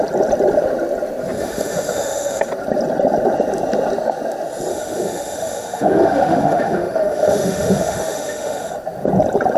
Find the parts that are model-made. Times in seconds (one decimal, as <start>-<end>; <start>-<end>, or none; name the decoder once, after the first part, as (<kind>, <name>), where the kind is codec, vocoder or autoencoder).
1.4-2.4 (autoencoder, DAC-VAE); 4.7-8.7